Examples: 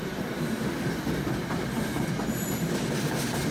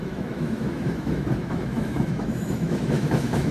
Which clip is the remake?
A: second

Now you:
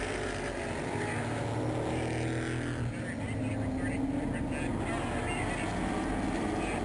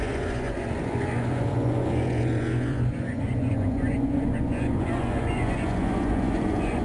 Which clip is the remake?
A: second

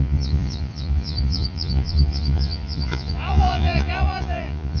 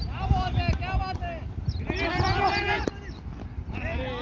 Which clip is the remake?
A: first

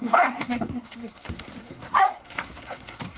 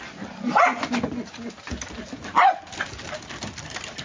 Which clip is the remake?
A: first